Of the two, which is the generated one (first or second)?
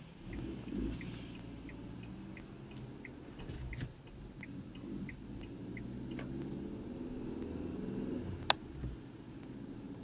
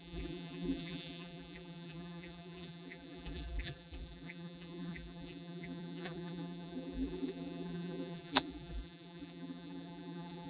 second